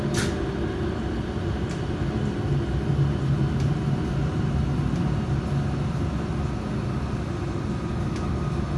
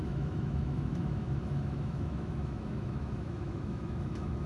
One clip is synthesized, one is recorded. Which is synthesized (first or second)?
second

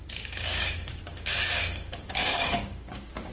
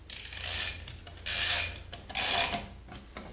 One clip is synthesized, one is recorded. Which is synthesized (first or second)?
first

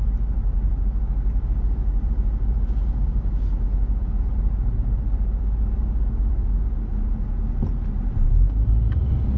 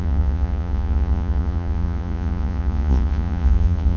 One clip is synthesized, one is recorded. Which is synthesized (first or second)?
second